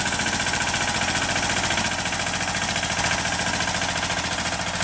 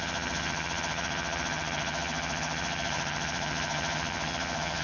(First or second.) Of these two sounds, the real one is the first